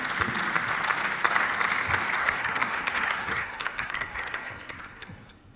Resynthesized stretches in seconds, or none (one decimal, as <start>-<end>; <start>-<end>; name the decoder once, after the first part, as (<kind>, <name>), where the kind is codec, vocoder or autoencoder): 2.2-5.6 (codec, SNAC)